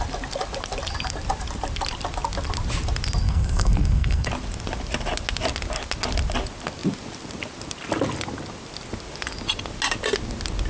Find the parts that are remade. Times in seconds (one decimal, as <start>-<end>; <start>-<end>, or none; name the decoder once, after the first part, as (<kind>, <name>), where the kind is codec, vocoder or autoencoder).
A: 3.2-4.3 (codec, SNAC)